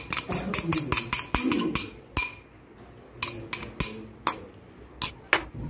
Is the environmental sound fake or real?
real